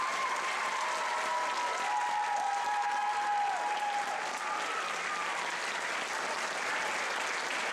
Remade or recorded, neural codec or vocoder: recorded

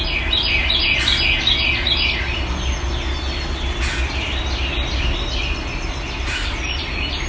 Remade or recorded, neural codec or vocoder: recorded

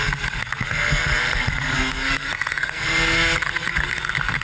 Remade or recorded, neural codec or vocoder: remade, codec, SNAC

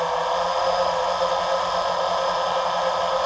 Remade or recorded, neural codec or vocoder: recorded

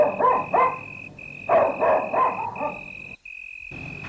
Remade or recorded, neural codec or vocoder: recorded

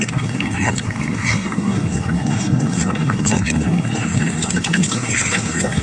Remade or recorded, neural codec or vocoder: remade, codec, SNAC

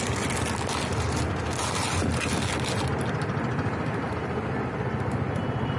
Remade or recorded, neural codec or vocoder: recorded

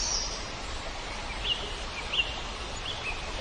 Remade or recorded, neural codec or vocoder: recorded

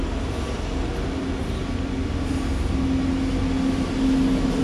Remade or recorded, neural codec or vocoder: recorded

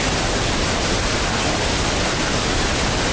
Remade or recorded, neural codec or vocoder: recorded